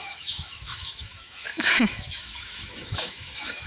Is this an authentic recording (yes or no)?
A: no